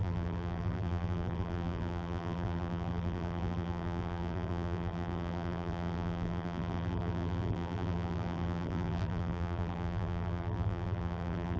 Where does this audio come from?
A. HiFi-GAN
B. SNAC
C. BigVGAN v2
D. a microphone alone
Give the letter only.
C